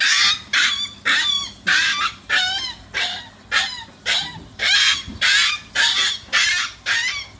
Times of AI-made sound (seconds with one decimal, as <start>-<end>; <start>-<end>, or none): none